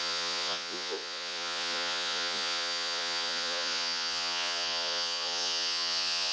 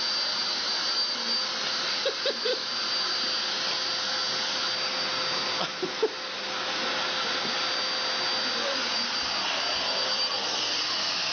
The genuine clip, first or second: second